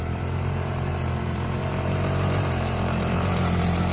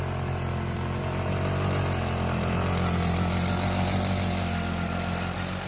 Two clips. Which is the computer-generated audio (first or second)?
first